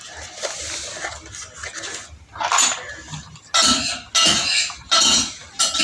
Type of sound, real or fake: real